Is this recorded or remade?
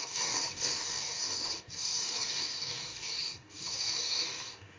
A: remade